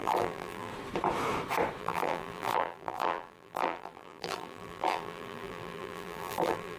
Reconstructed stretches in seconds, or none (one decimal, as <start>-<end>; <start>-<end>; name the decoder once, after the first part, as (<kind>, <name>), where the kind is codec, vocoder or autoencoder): 0.0-0.7 (vocoder, BigVGAN v2); 1.8-6.8